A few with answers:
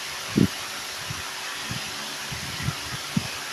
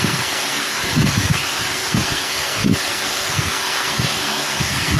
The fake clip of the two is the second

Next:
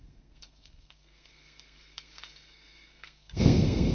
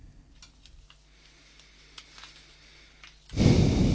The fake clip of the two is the first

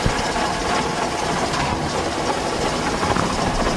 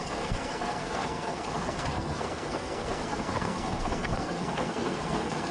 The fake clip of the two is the second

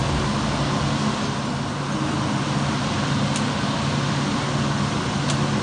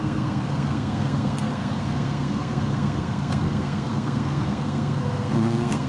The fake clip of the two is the second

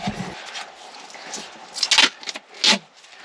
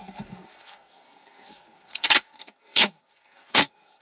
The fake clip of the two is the second